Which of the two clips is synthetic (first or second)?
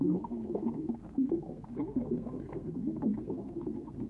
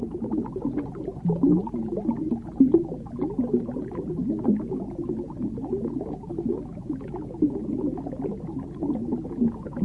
first